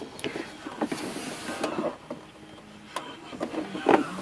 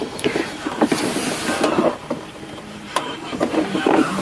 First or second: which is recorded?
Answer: first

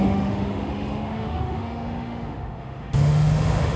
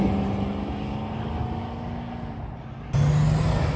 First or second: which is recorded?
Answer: second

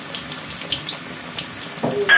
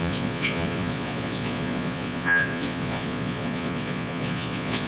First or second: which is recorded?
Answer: first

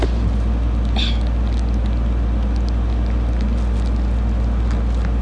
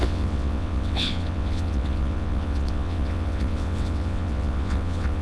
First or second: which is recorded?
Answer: first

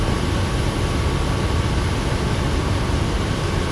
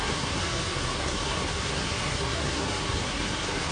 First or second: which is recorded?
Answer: first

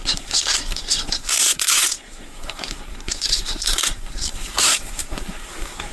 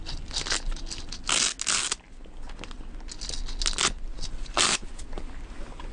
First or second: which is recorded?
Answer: second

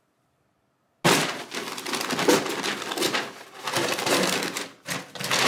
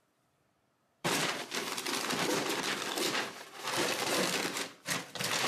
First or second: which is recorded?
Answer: first